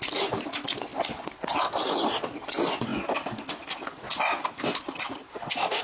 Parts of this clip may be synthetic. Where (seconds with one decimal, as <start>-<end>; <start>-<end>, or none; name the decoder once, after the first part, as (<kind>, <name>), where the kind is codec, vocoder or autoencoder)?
5.3-5.8 (autoencoder, DAC-VAE)